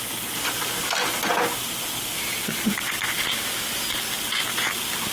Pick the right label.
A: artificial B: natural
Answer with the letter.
B